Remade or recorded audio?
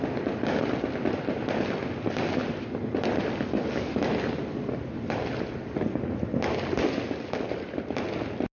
recorded